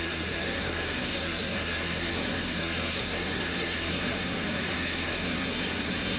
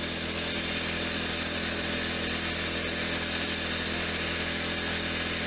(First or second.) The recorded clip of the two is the second